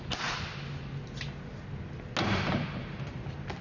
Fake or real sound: real